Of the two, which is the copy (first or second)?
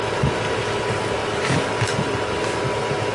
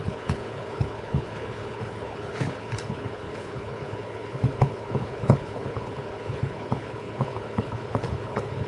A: second